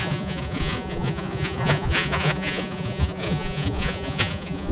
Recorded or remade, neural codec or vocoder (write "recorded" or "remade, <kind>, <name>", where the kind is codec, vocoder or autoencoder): remade, vocoder, Vocos